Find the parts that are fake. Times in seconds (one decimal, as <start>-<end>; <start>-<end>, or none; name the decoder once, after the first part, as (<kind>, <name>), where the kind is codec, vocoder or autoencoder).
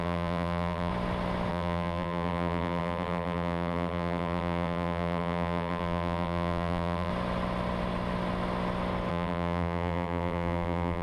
0.0-0.9 (vocoder, BigVGAN v2); 1.5-7.1; 9.1-11.0